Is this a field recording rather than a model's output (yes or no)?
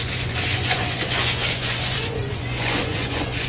no